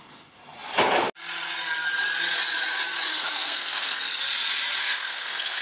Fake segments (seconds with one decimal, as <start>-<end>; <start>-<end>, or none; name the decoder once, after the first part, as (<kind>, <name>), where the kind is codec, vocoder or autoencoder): 3.1-4.2 (codec, SNAC); 4.8-5.6